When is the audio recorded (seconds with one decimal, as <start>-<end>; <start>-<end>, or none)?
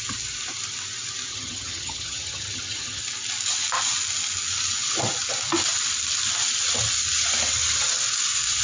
0.0-1.3; 3.0-8.6